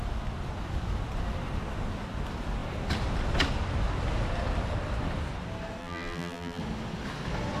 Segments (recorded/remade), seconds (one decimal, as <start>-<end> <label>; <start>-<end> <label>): 0.0-5.8 recorded; 5.8-6.6 remade; 6.6-7.6 recorded